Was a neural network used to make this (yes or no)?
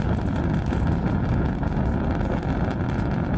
no